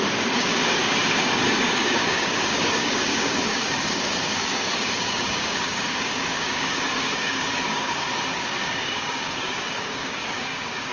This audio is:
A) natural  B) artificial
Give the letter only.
B